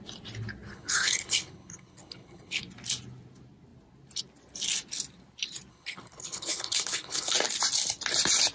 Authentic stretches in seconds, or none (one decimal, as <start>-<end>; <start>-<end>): 0.0-0.7; 2.6-5.7; 7.3-8.5